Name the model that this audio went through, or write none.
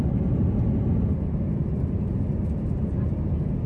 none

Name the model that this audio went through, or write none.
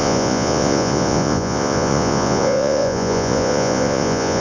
vocoder, Vocos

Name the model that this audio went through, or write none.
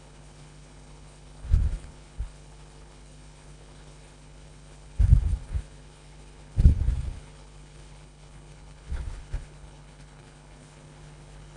codec, HILCodec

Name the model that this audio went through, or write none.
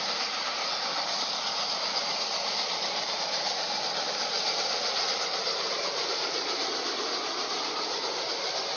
vocoder, BigVGAN v2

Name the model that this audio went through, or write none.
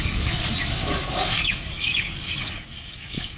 codec, DAC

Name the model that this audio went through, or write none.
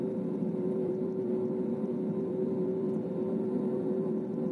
vocoder, BigVGAN v2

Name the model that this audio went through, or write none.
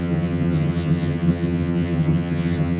vocoder, HiFi-GAN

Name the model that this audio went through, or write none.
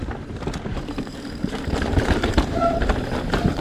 vocoder, BigVGAN v2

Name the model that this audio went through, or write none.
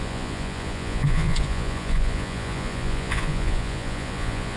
vocoder, Vocos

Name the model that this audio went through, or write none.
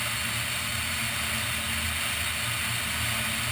none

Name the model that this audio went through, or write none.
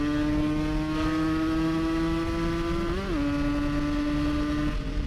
none